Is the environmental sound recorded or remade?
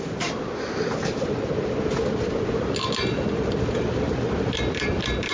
recorded